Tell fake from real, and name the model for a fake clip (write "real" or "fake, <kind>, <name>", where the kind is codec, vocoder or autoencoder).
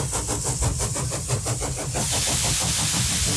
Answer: real